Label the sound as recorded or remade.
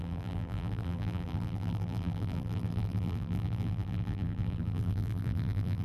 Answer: remade